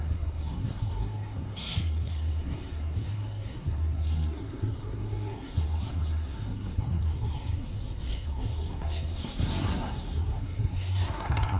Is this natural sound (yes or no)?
no